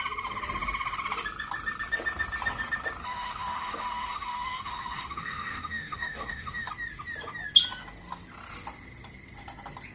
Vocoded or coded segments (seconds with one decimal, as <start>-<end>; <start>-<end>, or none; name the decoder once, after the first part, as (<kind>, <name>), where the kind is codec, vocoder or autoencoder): 3.0-6.7 (autoencoder, DAC-VAE)